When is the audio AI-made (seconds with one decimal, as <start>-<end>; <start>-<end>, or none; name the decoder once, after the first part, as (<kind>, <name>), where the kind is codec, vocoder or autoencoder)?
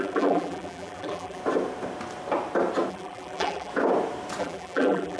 0.0-1.4 (vocoder, BigVGAN v2); 2.9-3.7; 4.4-5.2